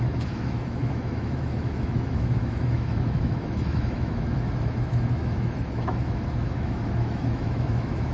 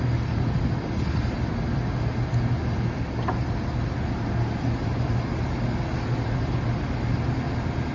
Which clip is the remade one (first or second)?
first